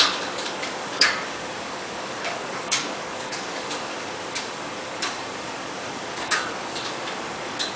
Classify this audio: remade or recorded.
remade